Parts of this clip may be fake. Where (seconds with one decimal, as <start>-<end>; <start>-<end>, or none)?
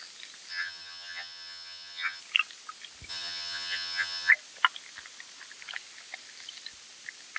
0.5-2.2; 3.1-4.3